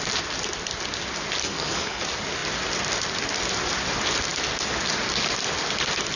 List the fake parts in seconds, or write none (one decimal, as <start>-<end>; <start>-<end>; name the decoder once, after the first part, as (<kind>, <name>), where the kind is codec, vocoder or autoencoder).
1.4-2.0 (codec, SNAC)